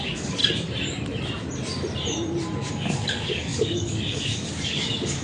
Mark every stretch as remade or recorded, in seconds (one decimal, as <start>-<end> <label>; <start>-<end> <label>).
0.0-0.4 remade; 0.4-2.7 recorded; 2.7-5.2 remade